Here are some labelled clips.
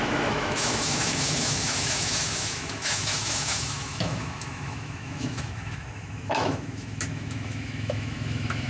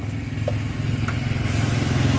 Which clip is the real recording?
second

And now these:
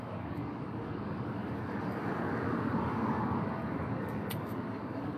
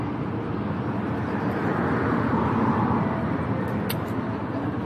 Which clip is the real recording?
second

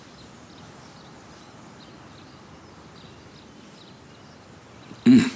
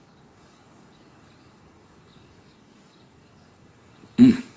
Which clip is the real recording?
first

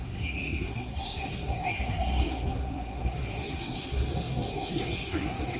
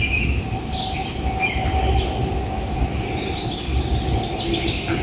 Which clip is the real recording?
second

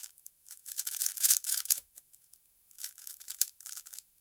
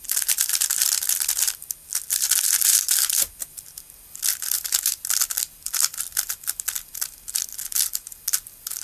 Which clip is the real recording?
second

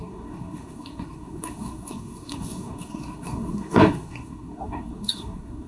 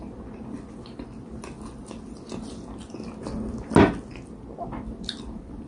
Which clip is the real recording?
second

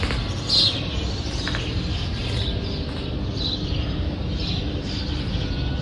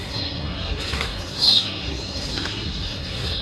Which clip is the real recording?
first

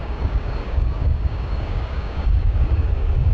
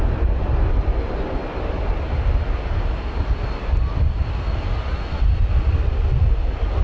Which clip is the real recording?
second